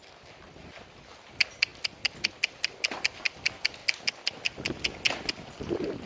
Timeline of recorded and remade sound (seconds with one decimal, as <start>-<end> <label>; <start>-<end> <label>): 0.0-6.1 recorded